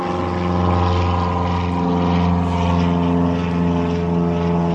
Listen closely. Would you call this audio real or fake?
real